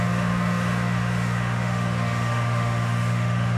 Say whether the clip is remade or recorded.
remade